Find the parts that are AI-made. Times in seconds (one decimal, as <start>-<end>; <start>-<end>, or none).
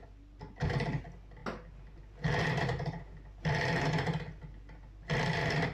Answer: none